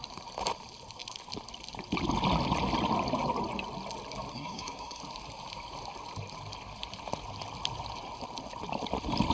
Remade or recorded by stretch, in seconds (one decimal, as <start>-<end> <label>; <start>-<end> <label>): 0.0-4.3 recorded; 4.3-5.0 remade; 5.0-9.3 recorded